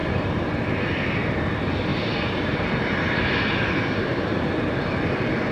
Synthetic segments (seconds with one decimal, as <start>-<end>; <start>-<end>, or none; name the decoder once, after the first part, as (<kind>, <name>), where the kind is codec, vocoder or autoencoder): 0.0-0.8 (vocoder, BigVGAN v2); 1.9-4.8